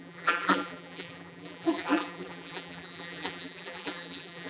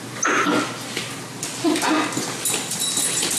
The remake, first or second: first